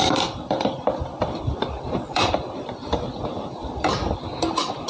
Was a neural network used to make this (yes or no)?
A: yes